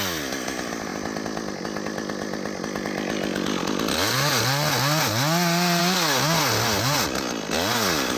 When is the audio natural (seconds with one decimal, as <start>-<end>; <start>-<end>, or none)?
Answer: 0.0-8.2